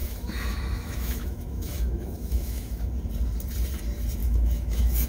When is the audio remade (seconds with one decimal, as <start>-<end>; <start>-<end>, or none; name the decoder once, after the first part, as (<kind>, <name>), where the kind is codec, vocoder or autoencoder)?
0.0-2.9 (autoencoder, DAC-VAE); 4.2-5.1